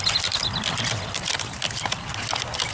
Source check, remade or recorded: recorded